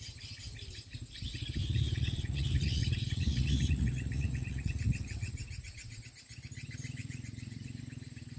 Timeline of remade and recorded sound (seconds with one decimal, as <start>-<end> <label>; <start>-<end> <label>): 0.0-1.6 recorded; 1.6-6.0 remade; 6.0-7.0 recorded; 7.0-7.8 remade; 7.8-8.4 recorded